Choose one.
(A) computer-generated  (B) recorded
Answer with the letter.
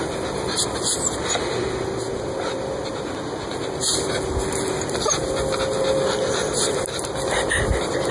B